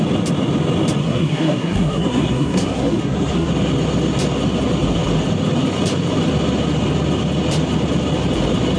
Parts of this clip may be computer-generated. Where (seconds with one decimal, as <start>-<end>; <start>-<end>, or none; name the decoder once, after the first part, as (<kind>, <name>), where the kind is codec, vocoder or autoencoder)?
1.0-3.5 (codec, SNAC)